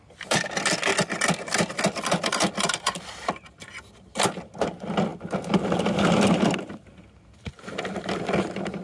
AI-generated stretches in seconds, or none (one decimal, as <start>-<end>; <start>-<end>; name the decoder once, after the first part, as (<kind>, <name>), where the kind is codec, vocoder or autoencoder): none